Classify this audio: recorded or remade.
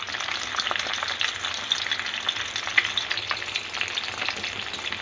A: recorded